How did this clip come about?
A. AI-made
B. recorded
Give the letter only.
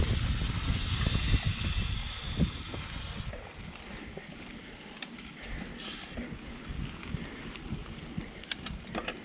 B